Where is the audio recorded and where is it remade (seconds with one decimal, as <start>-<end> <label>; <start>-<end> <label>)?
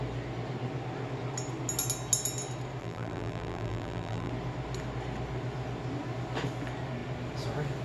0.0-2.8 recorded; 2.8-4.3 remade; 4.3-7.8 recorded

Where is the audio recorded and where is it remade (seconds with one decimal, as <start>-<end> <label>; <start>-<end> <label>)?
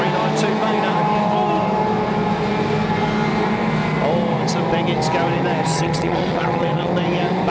0.0-5.7 recorded; 5.7-6.9 remade; 6.9-7.5 recorded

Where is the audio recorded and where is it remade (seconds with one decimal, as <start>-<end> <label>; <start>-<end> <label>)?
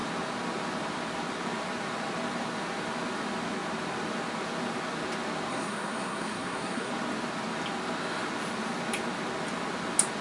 0.0-5.5 recorded; 5.5-6.9 remade; 6.9-10.2 recorded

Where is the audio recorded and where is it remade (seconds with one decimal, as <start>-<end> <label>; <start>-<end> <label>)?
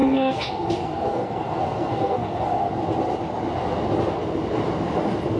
0.0-2.7 remade; 2.7-5.4 recorded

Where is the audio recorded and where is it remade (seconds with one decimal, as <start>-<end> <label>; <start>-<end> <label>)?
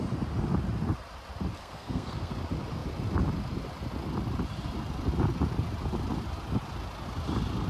0.0-1.6 recorded; 1.6-2.3 remade; 2.3-7.7 recorded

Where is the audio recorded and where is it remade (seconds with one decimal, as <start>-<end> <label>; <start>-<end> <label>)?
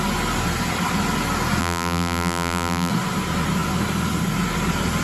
0.0-1.6 recorded; 1.6-2.9 remade; 2.9-5.0 recorded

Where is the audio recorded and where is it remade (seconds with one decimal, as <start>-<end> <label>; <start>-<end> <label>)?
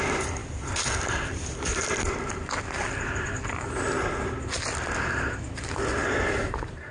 0.0-6.9 remade